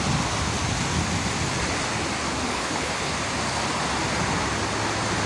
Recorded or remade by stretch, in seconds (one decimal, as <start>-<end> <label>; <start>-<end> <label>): 0.0-2.5 recorded; 2.5-3.1 remade; 3.1-5.3 recorded